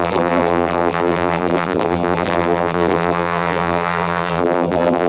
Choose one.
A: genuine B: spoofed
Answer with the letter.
B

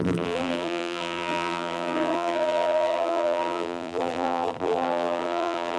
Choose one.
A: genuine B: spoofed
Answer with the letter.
B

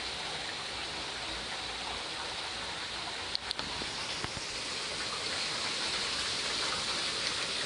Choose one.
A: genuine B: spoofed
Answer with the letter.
A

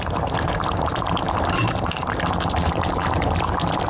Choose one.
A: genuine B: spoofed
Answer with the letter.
B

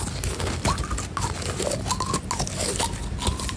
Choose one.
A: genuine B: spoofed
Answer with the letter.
A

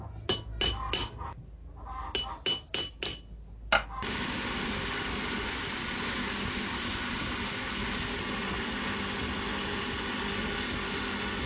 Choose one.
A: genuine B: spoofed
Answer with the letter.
A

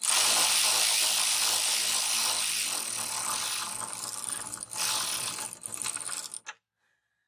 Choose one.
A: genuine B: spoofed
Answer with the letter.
A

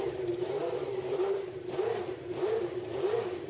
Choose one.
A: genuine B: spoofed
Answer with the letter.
B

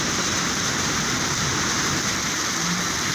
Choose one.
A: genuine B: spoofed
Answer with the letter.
B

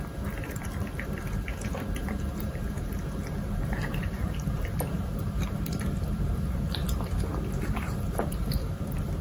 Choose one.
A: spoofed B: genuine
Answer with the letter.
A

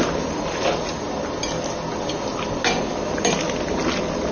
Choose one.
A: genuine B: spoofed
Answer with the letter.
A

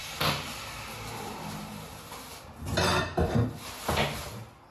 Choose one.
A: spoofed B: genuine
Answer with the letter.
B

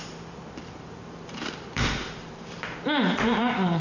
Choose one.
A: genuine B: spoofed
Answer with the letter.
B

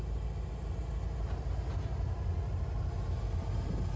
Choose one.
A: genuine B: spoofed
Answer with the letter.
A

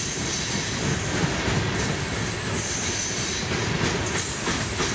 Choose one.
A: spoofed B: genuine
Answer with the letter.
A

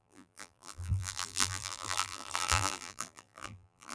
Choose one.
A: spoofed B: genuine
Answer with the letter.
A